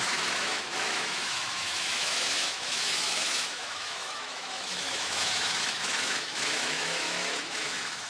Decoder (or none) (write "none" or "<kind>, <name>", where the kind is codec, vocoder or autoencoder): autoencoder, DAC-VAE